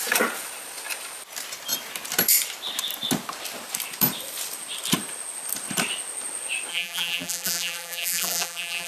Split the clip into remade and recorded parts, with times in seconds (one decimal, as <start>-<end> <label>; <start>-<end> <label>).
0.0-6.7 recorded; 6.7-8.9 remade

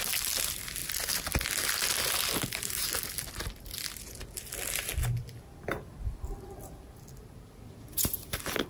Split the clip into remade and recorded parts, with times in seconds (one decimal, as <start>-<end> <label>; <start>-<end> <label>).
0.0-8.7 recorded

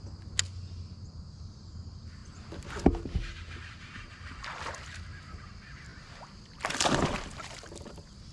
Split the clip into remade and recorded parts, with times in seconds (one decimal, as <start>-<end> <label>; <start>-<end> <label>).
0.0-8.3 recorded

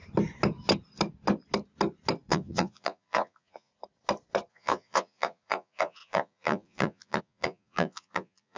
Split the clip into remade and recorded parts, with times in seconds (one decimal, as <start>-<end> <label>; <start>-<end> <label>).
0.0-2.3 recorded; 2.3-3.7 remade; 3.7-4.5 recorded; 4.5-8.6 remade

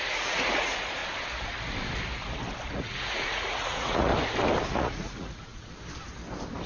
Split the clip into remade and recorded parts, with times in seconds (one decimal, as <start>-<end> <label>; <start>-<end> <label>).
0.0-1.0 remade; 1.0-2.7 recorded; 2.7-4.1 remade; 4.1-4.7 recorded; 4.7-5.7 remade; 5.7-6.7 recorded

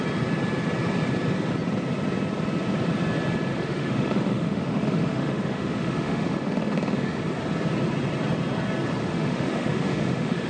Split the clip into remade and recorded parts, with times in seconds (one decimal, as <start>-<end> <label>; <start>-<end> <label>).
0.0-3.5 recorded; 3.5-7.2 remade; 7.2-9.0 recorded; 9.0-10.5 remade